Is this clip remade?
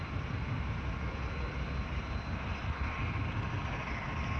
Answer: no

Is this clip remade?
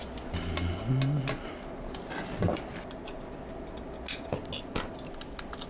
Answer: no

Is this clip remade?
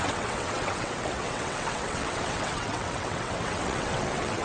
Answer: yes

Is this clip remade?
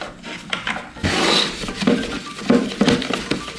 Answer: no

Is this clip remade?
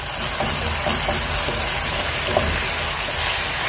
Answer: no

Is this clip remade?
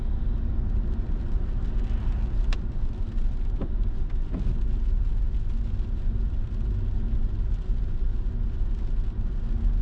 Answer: no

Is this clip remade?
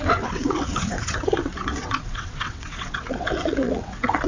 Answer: yes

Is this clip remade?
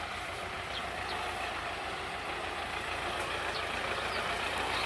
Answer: no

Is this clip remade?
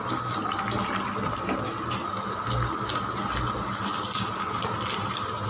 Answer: no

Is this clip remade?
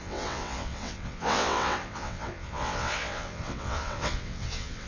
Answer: yes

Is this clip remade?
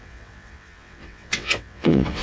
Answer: yes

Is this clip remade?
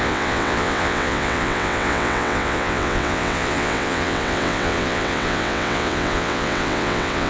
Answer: yes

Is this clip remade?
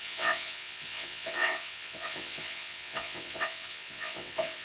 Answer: yes